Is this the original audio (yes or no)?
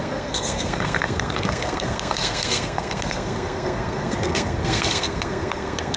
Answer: no